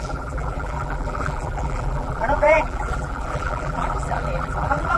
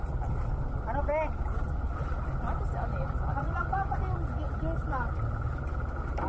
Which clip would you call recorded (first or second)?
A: second